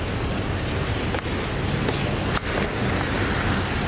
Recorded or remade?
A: recorded